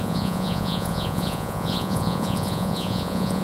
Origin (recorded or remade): remade